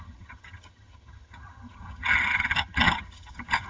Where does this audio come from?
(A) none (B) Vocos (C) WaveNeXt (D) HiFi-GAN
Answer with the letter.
D